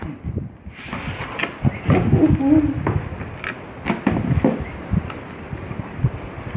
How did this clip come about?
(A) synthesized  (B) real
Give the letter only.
B